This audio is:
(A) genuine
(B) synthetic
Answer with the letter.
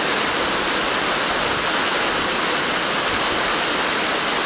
A